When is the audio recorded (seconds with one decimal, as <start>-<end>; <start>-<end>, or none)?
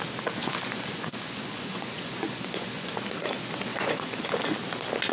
0.0-0.4; 3.0-3.7; 4.3-5.1